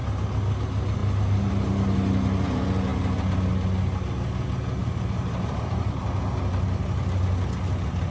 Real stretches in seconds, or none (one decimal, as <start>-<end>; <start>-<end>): 0.0-4.8; 6.0-8.1